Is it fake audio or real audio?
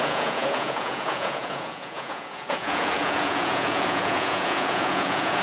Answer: fake